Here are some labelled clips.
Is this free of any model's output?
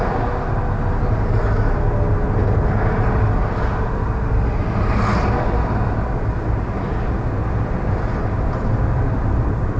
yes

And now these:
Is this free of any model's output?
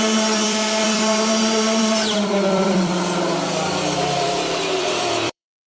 no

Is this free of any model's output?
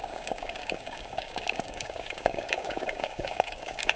no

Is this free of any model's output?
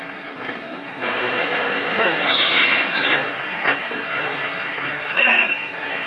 no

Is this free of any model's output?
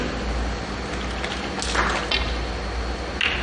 yes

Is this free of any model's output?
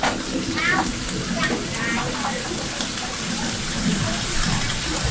yes